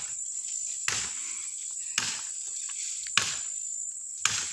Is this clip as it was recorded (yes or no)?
yes